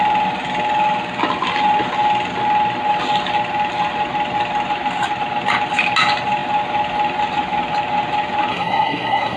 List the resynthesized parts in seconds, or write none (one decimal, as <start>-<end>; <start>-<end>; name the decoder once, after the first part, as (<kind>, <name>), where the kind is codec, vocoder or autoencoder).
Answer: 8.5-9.4 (codec, SNAC)